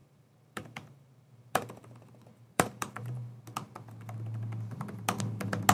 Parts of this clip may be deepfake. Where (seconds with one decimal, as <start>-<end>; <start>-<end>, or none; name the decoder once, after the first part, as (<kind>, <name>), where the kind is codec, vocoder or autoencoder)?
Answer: 0.0-3.4 (vocoder, BigVGAN v2)